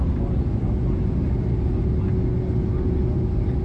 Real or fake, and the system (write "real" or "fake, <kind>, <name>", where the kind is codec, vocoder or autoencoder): real